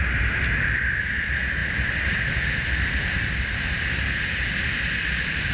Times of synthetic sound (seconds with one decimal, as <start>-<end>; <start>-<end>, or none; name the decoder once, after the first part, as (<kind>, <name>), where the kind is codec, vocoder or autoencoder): none